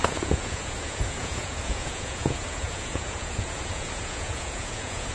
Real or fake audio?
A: fake